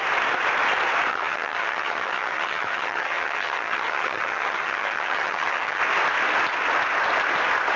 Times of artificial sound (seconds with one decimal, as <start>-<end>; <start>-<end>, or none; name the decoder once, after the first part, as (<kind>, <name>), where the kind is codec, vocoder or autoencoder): 1.1-5.8 (vocoder, HiFi-GAN)